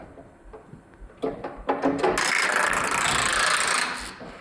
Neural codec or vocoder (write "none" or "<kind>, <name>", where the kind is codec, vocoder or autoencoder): none